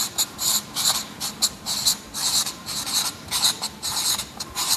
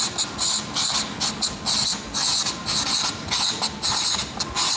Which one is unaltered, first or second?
second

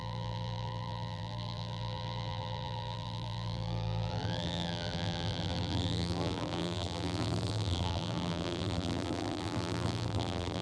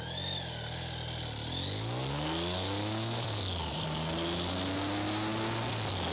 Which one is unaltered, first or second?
second